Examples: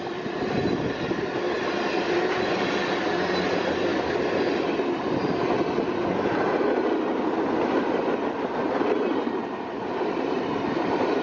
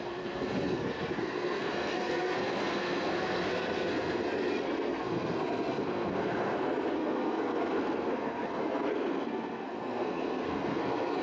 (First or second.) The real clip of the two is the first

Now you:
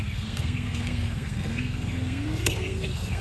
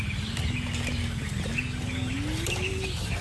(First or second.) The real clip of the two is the second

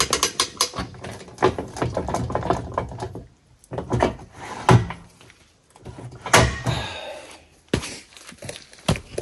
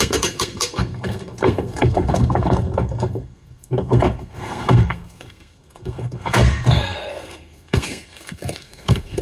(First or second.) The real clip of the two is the first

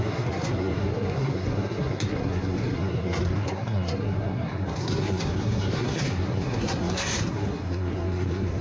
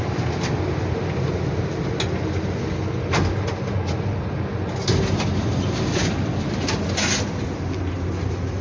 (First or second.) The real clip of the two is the second